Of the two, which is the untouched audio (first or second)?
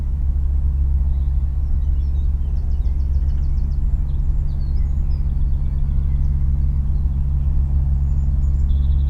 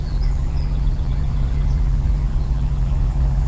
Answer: first